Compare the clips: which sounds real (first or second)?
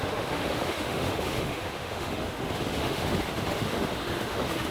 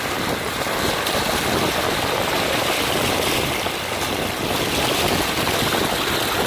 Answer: second